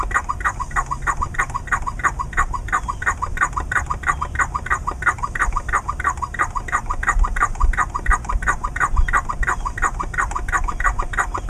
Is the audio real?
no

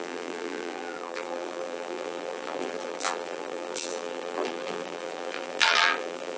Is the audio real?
no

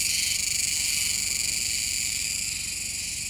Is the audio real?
yes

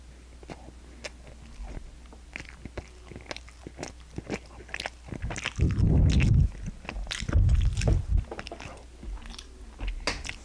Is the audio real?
yes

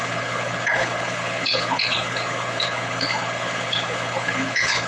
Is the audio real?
no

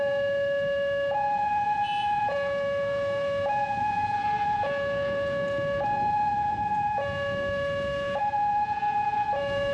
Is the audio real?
no